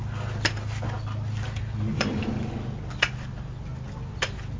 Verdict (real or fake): real